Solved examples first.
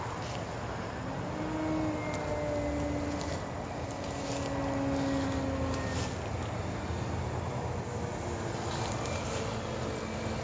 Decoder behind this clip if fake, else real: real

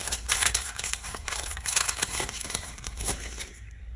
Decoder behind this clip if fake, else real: fake, codec, SNAC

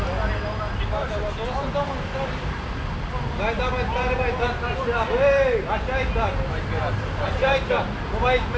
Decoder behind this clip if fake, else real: real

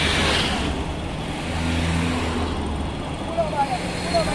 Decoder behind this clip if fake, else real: real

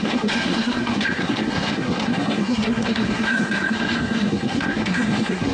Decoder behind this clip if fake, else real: fake, codec, SNAC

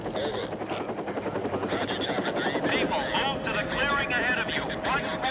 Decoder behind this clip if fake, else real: real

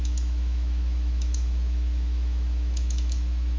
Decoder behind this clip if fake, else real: fake, autoencoder, DAC-VAE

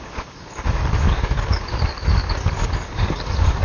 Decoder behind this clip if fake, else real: fake, codec, DAC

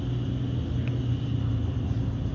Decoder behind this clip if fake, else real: real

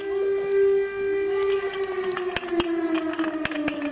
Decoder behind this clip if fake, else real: real